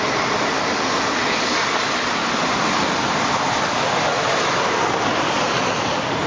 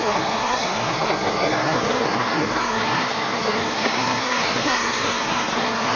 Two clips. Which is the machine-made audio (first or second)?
second